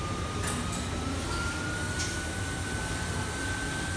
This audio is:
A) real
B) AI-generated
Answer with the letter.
A